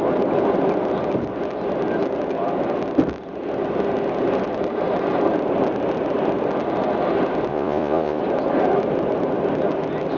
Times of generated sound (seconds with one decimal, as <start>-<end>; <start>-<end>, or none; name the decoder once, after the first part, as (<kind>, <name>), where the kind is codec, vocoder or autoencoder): 7.5-8.2 (vocoder, Vocos)

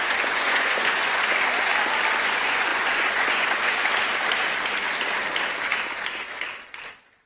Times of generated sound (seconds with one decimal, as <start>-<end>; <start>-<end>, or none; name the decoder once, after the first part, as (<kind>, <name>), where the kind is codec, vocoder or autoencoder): 0.0-1.7 (vocoder, Vocos); 2.2-3.9

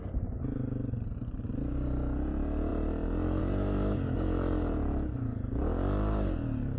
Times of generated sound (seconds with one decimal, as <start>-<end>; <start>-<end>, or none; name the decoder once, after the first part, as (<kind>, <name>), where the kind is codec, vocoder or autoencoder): none

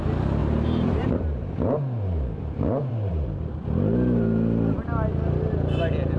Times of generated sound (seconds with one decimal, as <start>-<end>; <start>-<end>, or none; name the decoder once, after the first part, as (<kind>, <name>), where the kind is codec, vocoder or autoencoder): 0.4-3.4 (vocoder, BigVGAN v2)

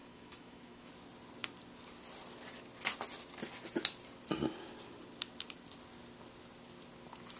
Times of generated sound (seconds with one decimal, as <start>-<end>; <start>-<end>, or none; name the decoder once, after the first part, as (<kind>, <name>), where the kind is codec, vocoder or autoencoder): 0.0-0.9 (autoencoder, DAC-VAE)

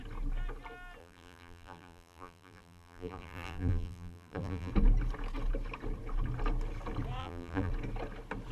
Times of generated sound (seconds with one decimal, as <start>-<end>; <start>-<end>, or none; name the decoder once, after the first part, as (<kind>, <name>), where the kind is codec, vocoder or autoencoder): 1.0-4.7 (vocoder, BigVGAN v2); 7.2-7.7